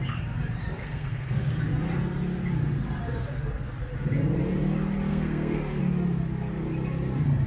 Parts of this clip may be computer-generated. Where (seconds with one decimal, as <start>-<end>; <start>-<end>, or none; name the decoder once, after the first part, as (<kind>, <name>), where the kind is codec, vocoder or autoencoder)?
0.8-1.6 (codec, SNAC); 5.1-5.8